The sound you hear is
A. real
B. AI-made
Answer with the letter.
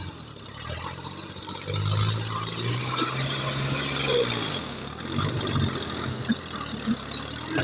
A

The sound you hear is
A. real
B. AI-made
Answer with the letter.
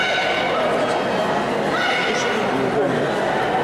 A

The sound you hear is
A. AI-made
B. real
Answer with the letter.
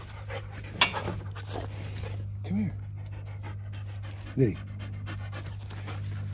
B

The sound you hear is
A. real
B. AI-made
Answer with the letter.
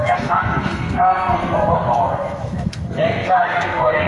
B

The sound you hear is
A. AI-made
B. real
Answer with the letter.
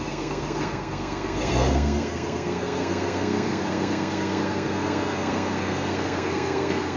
A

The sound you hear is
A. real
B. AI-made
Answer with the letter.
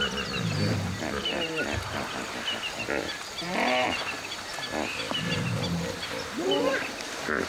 A